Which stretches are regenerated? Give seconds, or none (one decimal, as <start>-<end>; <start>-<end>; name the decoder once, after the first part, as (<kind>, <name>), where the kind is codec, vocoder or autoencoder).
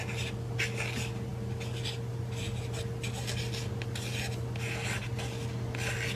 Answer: none